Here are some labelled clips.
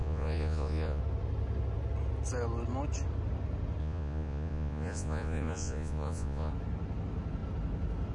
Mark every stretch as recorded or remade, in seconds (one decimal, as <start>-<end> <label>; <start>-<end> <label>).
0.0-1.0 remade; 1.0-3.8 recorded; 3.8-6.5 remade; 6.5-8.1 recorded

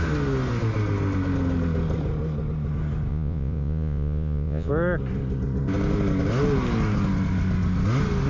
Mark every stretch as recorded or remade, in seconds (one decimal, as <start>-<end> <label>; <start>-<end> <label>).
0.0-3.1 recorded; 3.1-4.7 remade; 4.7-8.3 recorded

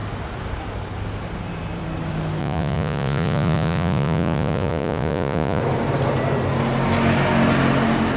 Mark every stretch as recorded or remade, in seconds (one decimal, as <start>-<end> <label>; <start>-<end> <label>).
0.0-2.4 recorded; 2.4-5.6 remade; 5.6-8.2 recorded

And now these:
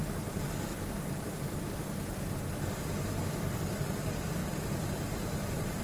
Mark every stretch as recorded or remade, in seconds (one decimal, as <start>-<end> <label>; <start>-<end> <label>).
0.0-5.8 recorded

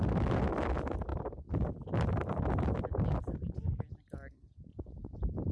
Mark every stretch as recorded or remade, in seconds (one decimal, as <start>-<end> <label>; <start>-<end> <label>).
0.0-4.7 recorded; 4.7-5.5 remade

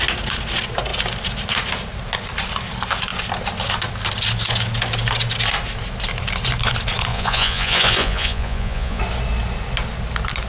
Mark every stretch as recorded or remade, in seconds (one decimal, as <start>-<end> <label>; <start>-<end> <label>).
0.0-7.1 recorded; 7.1-9.0 remade; 9.0-10.5 recorded

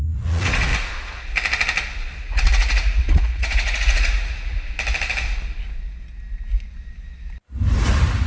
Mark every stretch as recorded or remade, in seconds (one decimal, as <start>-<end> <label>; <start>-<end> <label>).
0.0-0.7 remade; 0.7-2.2 recorded; 2.2-4.5 remade; 4.5-8.3 recorded